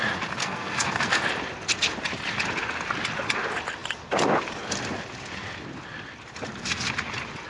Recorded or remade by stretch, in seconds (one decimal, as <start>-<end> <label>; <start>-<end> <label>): 0.0-0.4 recorded; 0.4-1.2 remade; 1.2-7.5 recorded